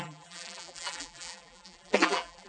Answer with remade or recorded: remade